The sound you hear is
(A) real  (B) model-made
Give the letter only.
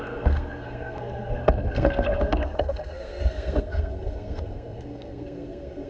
B